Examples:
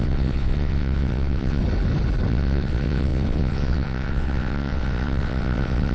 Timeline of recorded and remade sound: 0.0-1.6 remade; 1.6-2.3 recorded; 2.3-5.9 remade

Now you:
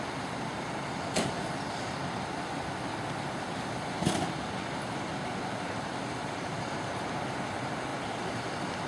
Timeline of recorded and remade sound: 0.0-8.9 recorded

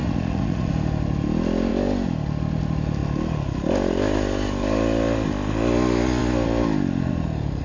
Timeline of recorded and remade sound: 0.0-0.7 remade; 0.7-7.6 recorded